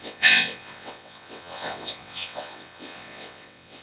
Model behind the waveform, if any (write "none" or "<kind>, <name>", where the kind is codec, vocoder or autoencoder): vocoder, WaveNeXt